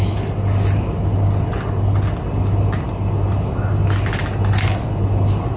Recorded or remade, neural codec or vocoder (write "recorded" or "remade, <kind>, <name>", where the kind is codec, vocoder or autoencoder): recorded